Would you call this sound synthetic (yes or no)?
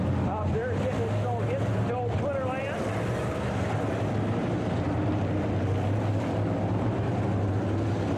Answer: no